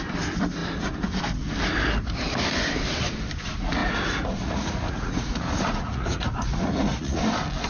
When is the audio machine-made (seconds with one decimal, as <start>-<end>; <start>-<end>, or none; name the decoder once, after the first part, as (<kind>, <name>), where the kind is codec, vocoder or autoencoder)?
3.8-7.2 (vocoder, Vocos)